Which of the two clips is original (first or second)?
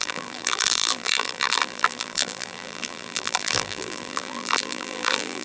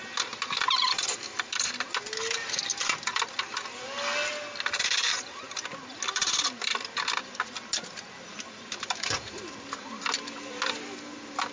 second